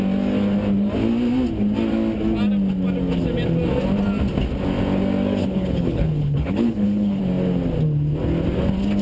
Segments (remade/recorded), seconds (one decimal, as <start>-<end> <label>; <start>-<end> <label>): 0.0-5.4 recorded; 5.4-7.2 remade; 7.2-9.0 recorded